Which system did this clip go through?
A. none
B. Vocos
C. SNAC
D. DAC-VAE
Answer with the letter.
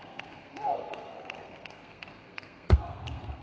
C